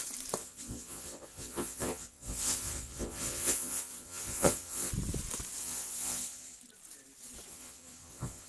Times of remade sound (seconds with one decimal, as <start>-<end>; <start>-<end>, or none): 0.4-4.9; 5.6-6.6; 7.5-8.5